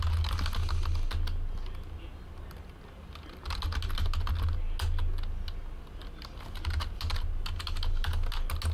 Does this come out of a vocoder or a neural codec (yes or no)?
no